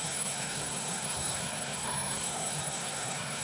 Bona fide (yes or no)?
no